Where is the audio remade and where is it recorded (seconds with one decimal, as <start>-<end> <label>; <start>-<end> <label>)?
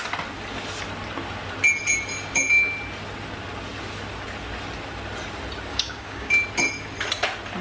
0.0-5.7 recorded; 5.7-6.3 remade; 6.3-7.6 recorded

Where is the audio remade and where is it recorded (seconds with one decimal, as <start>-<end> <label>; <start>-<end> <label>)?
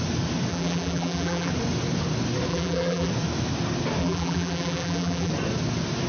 0.0-0.5 recorded; 0.5-1.5 remade; 1.5-2.5 recorded; 2.5-3.1 remade; 3.1-4.0 recorded; 4.0-5.3 remade; 5.3-6.1 recorded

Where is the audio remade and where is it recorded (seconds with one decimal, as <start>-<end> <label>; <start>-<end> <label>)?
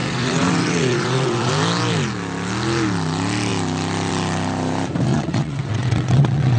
0.0-1.5 remade; 1.5-5.1 recorded; 5.1-6.6 remade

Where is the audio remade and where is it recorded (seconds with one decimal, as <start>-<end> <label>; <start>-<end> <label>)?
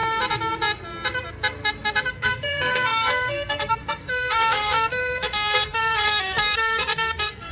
0.0-2.1 recorded; 2.1-7.5 remade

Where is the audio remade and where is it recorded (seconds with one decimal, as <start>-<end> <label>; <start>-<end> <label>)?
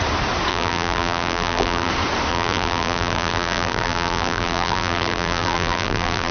0.0-0.5 recorded; 0.5-1.9 remade; 1.9-2.3 recorded; 2.3-6.3 remade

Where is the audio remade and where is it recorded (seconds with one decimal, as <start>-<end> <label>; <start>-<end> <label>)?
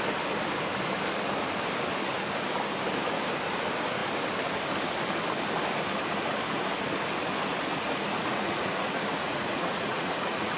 0.0-7.7 recorded; 7.7-10.6 remade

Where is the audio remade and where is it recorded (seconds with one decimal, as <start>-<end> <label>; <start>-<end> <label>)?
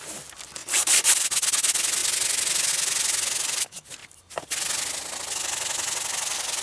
0.0-6.6 recorded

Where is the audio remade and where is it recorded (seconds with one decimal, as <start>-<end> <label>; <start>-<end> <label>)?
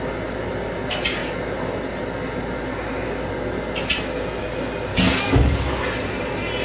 0.0-4.9 recorded; 4.9-5.7 remade; 5.7-6.6 recorded